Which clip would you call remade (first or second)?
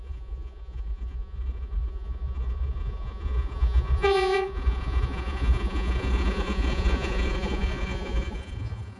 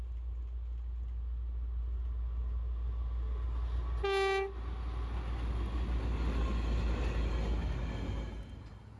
first